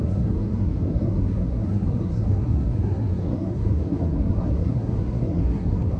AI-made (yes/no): yes